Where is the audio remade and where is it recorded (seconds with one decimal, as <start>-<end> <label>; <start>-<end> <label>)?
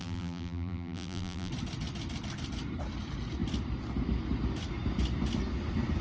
0.0-1.5 remade; 1.5-6.0 recorded